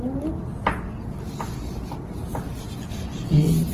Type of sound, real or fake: real